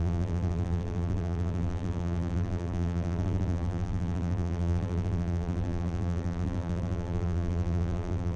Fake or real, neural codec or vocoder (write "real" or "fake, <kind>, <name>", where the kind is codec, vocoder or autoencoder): fake, vocoder, BigVGAN v2